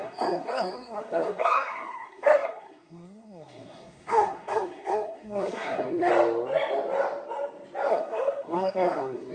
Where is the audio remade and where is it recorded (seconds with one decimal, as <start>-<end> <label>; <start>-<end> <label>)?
0.0-6.1 remade; 6.1-7.9 recorded; 7.9-9.3 remade

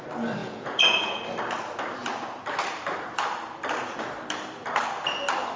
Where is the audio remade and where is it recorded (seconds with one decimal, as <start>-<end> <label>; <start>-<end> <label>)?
0.0-0.4 recorded; 0.4-1.2 remade; 1.2-5.6 recorded

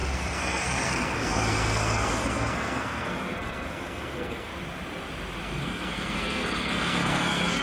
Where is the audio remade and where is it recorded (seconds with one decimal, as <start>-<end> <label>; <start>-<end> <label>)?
0.0-4.5 remade; 4.5-5.4 recorded; 5.4-7.6 remade

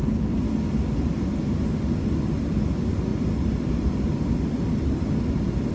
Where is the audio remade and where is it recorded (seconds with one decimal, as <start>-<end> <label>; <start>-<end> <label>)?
0.0-5.7 recorded